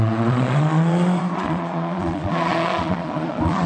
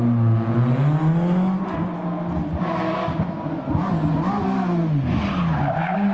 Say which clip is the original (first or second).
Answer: second